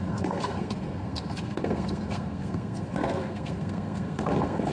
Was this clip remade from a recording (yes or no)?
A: yes